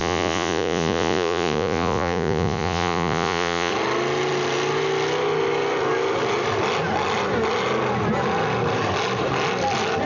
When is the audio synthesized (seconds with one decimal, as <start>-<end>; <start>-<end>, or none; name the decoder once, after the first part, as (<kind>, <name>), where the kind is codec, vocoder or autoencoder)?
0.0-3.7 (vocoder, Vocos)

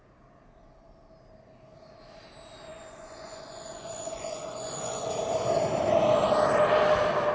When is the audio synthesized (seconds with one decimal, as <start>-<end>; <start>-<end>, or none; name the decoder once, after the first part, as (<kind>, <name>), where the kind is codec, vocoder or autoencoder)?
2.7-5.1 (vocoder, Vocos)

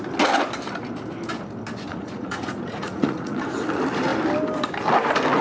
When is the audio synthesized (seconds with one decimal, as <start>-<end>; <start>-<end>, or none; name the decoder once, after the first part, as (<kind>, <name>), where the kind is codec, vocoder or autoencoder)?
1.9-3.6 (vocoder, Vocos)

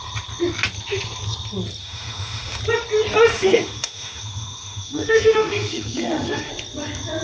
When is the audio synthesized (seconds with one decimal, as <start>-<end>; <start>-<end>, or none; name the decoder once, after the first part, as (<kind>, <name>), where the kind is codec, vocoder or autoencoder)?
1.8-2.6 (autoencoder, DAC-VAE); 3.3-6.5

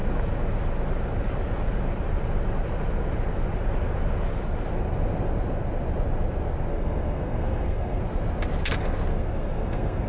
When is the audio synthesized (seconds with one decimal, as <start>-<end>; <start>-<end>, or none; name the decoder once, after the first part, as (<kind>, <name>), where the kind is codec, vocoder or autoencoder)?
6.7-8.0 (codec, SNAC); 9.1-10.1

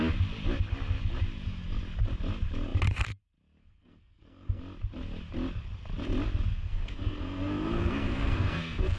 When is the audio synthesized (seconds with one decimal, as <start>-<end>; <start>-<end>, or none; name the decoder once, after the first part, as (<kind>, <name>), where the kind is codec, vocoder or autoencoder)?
3.6-4.6 (codec, SNAC); 6.5-9.0

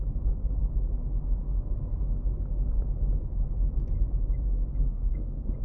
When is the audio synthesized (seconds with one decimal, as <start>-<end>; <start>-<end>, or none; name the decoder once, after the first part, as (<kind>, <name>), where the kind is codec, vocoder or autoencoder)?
4.7-5.6 (codec, SNAC)

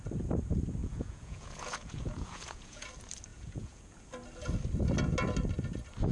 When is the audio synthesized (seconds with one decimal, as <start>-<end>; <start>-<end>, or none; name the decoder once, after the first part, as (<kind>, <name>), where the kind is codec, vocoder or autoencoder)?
0.8-2.9 (vocoder, Vocos); 3.3-4.0